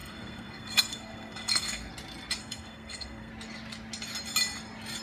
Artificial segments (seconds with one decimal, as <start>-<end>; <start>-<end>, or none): 0.0-1.9; 2.4-3.3